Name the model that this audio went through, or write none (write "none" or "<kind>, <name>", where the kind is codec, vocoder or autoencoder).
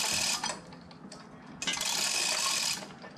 none